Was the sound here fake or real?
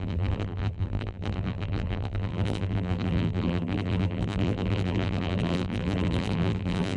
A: fake